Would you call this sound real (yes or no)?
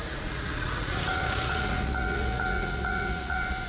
no